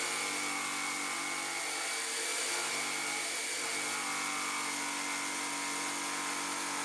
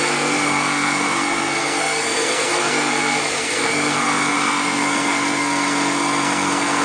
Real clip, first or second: first